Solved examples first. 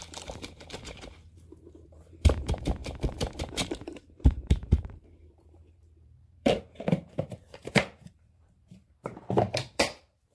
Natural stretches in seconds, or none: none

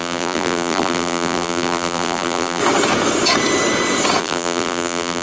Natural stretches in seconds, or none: 2.6-4.2